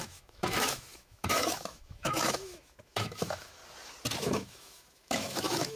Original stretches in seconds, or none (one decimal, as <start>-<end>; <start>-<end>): 3.6-4.2